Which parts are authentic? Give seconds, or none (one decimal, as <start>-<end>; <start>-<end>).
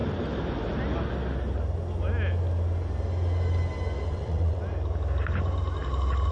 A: 0.0-4.1; 4.6-6.3